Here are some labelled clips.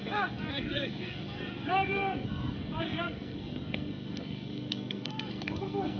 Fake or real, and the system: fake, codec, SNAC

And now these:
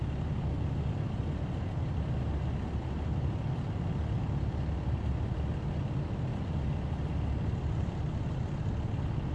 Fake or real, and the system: real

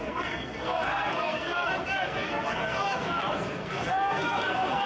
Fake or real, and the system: fake, codec, SNAC